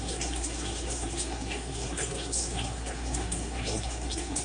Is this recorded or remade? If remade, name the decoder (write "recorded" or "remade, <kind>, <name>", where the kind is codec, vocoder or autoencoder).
remade, codec, SNAC